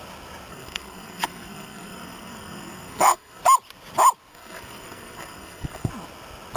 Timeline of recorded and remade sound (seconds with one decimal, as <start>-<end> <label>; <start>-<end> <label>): 0.0-0.5 recorded; 0.5-3.4 remade; 3.4-4.3 recorded; 4.3-5.9 remade; 5.9-6.6 recorded